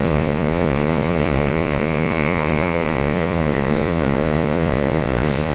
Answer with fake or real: fake